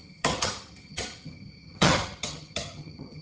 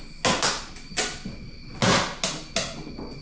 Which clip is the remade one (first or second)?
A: first